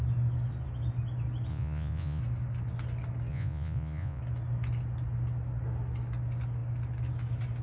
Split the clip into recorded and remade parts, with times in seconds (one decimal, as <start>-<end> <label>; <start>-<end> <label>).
0.0-1.5 recorded; 1.5-2.2 remade; 2.2-3.3 recorded; 3.3-4.2 remade; 4.2-7.6 recorded